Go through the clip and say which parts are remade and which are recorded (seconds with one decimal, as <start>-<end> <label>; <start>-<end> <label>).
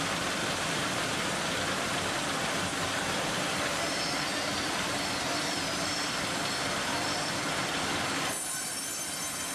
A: 0.0-0.4 recorded; 0.4-1.2 remade; 1.2-2.7 recorded; 2.7-4.0 remade; 4.0-4.6 recorded; 4.6-7.3 remade; 7.3-9.5 recorded